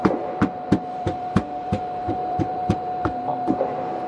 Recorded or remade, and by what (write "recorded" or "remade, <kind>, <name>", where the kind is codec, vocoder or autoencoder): remade, vocoder, BigVGAN v2